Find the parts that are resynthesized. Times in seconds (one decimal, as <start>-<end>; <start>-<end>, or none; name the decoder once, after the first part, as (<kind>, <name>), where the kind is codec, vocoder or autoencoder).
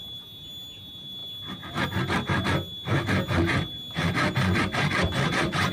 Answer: none